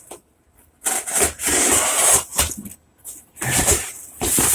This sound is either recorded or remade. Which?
recorded